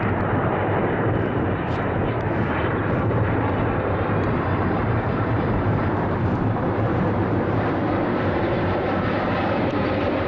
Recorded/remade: remade